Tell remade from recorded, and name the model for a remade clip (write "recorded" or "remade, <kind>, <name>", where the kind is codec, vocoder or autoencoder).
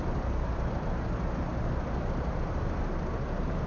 recorded